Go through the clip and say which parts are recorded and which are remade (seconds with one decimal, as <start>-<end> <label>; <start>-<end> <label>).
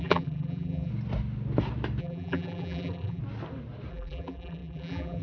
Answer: 0.0-0.9 remade; 0.9-2.0 recorded; 2.0-3.2 remade; 3.2-3.9 recorded; 3.9-5.2 remade